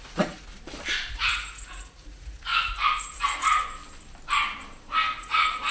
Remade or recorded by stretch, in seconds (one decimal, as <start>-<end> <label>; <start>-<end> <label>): 0.0-0.5 remade; 0.5-1.1 recorded; 1.1-2.5 remade; 2.5-3.0 recorded; 3.0-3.8 remade; 3.8-5.2 recorded; 5.2-5.7 remade